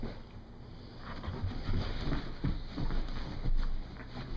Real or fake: real